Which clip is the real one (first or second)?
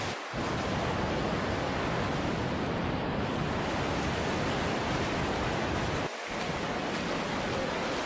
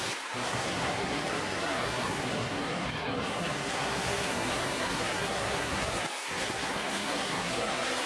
first